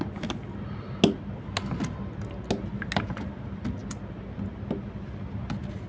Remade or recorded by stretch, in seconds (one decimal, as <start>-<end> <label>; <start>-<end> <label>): 0.0-5.9 recorded